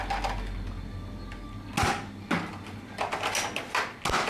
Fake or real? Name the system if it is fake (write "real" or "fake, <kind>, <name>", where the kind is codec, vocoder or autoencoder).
real